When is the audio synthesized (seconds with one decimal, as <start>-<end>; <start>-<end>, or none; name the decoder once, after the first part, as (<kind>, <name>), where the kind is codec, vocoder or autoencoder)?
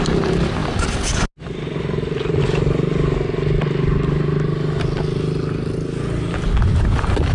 none